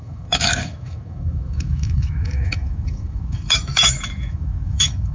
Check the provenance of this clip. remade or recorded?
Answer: remade